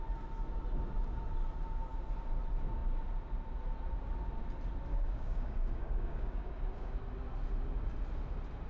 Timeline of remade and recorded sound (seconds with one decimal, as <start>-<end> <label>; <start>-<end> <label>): 0.0-4.9 recorded; 4.9-6.9 remade; 6.9-8.7 recorded